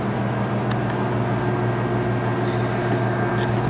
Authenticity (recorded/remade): recorded